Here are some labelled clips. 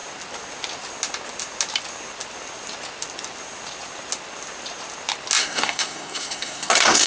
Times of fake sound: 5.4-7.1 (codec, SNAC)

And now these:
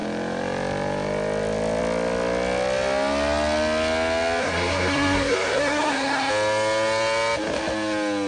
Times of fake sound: 4.4-6.3 (codec, SNAC)

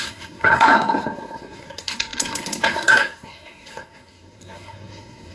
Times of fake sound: 0.0-5.3 (codec, SNAC)

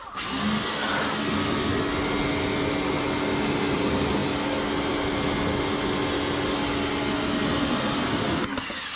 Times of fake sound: none

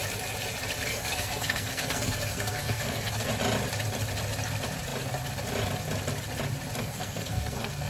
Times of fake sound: 0.9-3.3 (codec, SNAC); 6.8-7.9